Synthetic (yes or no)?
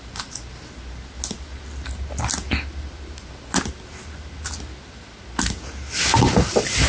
no